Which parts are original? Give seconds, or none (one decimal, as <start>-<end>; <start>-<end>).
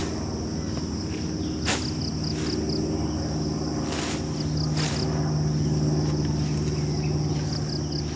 0.0-8.2